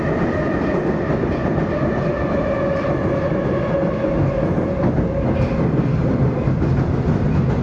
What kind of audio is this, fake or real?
real